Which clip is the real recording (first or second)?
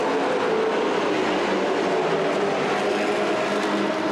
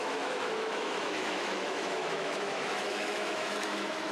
first